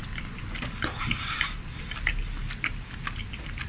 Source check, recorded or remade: recorded